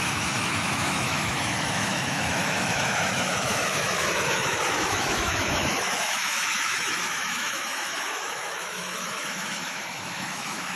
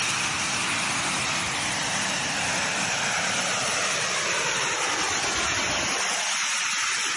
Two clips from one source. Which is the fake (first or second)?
first